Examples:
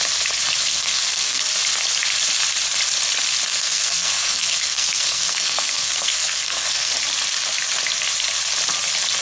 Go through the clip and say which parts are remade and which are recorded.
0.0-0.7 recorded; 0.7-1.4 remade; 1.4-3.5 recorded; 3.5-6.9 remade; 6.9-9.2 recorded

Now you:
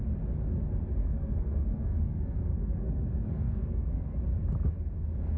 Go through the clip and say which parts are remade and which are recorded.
0.0-1.0 recorded; 1.0-4.2 remade; 4.2-5.4 recorded

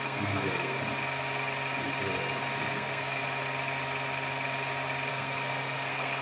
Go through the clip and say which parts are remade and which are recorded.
0.0-0.9 remade; 0.9-2.6 recorded; 2.6-3.2 remade; 3.2-5.1 recorded; 5.1-6.2 remade

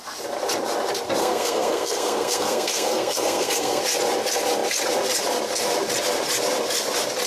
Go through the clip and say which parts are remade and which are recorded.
0.0-1.2 recorded; 1.2-3.8 remade; 3.8-7.3 recorded

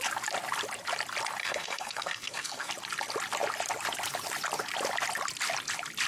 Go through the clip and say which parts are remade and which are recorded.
0.0-1.4 recorded; 1.4-2.7 remade; 2.7-6.1 recorded